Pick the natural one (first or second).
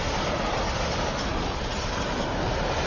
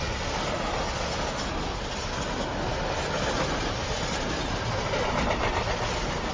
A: second